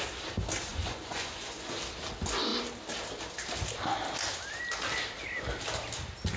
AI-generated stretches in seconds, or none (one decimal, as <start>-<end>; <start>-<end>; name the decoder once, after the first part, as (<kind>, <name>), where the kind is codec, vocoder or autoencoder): 0.7-1.8 (vocoder, Vocos)